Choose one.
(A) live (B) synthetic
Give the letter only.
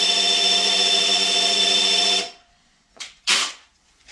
B